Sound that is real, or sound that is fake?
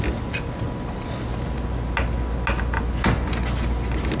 real